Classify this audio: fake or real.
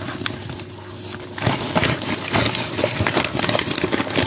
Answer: real